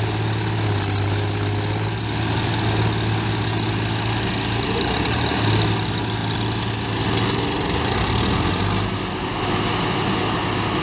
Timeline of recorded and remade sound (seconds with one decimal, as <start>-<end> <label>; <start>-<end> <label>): 0.0-10.8 recorded

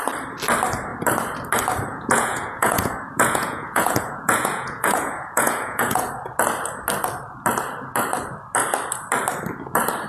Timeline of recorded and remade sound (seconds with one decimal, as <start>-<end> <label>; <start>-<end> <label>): 0.0-1.9 recorded; 1.9-6.1 remade; 6.1-10.1 recorded

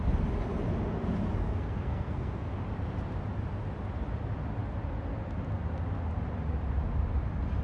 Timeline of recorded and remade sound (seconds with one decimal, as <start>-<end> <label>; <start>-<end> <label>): 0.0-1.4 recorded; 1.4-2.5 remade; 2.5-7.6 recorded

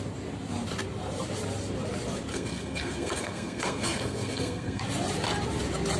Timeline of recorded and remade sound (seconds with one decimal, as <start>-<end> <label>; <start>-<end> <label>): 0.0-2.3 recorded; 2.3-4.8 remade; 4.8-6.0 recorded

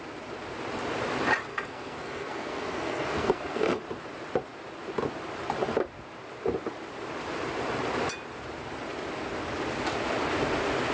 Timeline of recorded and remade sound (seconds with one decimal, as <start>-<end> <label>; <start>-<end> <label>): 0.0-1.5 recorded; 1.5-3.8 remade; 3.8-10.9 recorded

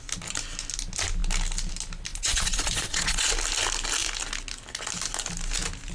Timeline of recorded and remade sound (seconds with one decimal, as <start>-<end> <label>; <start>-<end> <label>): 0.0-2.1 recorded; 2.1-3.3 remade; 3.3-5.9 recorded

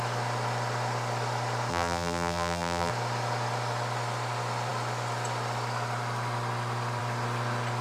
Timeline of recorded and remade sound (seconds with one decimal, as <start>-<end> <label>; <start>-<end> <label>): 0.0-1.7 recorded; 1.7-2.9 remade; 2.9-7.8 recorded